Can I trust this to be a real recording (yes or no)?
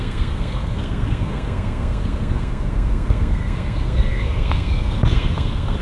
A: no